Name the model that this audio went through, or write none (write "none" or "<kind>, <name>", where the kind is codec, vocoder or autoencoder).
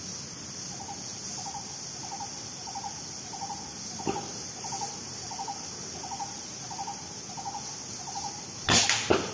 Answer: none